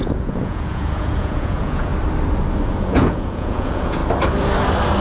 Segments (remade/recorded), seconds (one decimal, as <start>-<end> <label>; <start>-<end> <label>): 0.0-1.9 remade; 1.9-2.7 recorded; 2.7-4.0 remade; 4.0-5.0 recorded